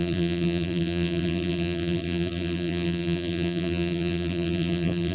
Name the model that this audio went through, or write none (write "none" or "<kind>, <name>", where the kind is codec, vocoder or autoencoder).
vocoder, BigVGAN v2